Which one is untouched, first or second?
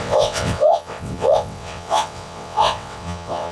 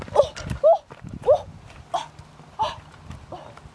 second